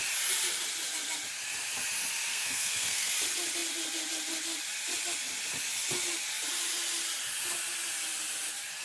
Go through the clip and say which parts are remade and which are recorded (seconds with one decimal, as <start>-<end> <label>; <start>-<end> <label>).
0.0-2.3 recorded; 2.3-3.1 remade; 3.1-8.8 recorded